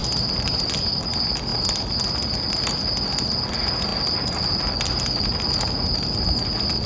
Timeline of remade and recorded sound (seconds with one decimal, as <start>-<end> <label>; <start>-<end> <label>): 0.0-6.9 recorded